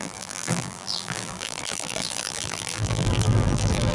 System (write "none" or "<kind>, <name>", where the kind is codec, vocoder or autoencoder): vocoder, BigVGAN v2